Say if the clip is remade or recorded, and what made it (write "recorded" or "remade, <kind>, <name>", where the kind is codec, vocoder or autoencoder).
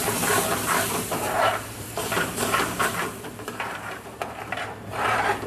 remade, vocoder, BigVGAN v2